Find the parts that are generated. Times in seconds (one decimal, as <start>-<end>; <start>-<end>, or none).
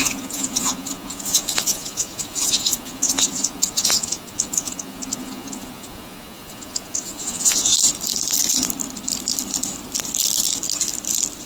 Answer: 0.0-7.7